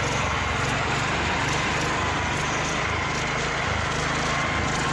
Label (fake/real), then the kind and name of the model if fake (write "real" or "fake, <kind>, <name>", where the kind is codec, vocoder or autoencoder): real